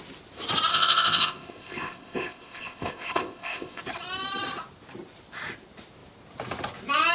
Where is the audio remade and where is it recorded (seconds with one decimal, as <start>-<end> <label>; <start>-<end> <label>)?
0.0-0.7 recorded; 0.7-3.8 remade; 3.8-7.1 recorded